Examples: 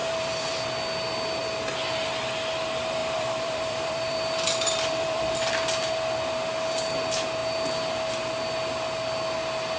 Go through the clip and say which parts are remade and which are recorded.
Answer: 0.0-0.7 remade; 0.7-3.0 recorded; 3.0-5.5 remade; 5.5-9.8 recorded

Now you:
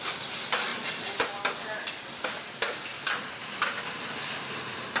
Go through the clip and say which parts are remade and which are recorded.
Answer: 0.0-5.0 recorded

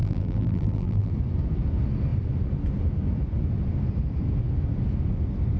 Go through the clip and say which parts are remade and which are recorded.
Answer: 0.0-1.1 remade; 1.1-5.6 recorded

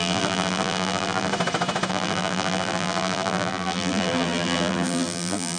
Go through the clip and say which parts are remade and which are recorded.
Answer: 0.0-1.3 remade; 1.3-1.9 recorded; 1.9-5.6 remade

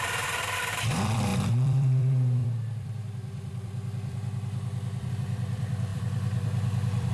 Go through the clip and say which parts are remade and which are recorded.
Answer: 0.0-7.1 remade

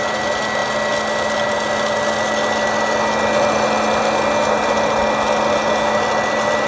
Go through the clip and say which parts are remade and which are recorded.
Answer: 0.0-6.7 recorded